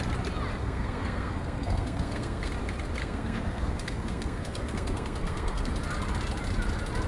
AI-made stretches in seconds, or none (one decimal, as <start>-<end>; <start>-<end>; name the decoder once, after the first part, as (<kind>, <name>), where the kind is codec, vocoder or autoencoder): 0.6-2.5 (codec, SNAC); 3.0-5.7